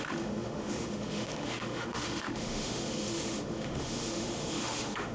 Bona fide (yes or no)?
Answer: no